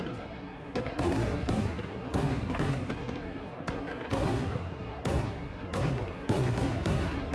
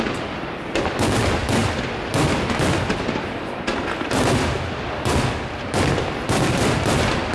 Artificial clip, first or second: first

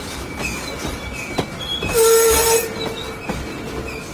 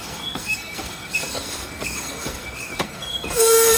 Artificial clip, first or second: second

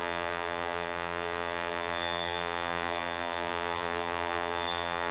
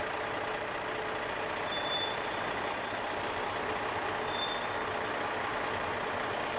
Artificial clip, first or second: first